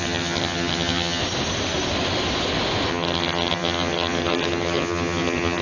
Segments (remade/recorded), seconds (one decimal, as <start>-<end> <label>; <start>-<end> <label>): 0.0-1.2 remade; 1.2-2.9 recorded; 2.9-5.6 remade

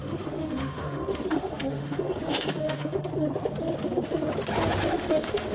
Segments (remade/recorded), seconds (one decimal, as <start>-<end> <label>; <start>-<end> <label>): 0.0-3.1 remade; 3.1-4.9 recorded; 4.9-5.5 remade

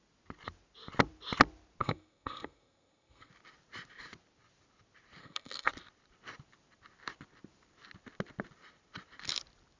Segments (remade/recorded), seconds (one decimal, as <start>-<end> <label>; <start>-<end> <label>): 0.0-1.8 recorded; 1.8-3.3 remade; 3.3-5.2 recorded; 5.2-5.7 remade; 5.7-9.8 recorded